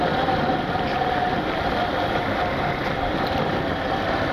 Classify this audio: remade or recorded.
recorded